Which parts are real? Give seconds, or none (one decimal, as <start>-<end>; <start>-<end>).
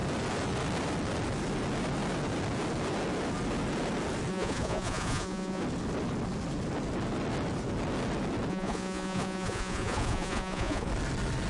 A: 0.0-4.3; 5.6-8.5; 10.9-11.5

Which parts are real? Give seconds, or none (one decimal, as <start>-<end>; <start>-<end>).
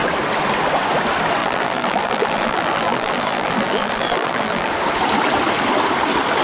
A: 0.0-1.4; 4.7-6.4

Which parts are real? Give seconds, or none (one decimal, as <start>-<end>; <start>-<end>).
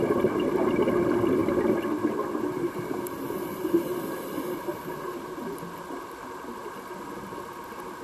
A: 0.0-1.4; 4.0-6.6; 7.3-8.0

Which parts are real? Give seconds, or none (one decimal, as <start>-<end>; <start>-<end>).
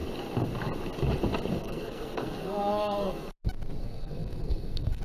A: 0.0-1.6; 3.4-3.8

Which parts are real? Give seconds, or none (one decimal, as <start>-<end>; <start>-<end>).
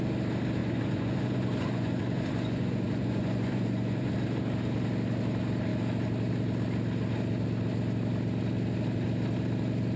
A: 0.0-0.6; 4.1-10.0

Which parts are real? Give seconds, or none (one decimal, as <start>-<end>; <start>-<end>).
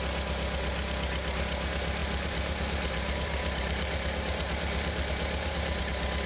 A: 0.0-2.0; 5.8-6.3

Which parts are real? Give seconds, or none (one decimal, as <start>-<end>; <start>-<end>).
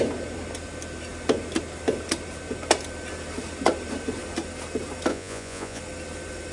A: 0.0-5.1; 5.8-6.5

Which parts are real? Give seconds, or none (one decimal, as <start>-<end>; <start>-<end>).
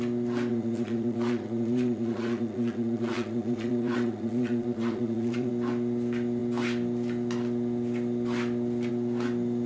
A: 0.0-0.5; 5.5-9.7